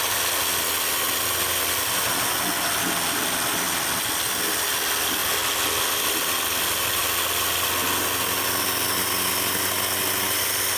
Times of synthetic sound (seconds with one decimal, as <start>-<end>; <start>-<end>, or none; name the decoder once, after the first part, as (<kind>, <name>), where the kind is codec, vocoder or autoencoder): none